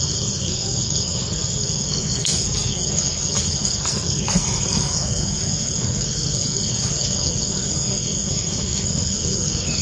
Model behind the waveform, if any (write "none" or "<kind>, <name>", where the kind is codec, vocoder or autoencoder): codec, SNAC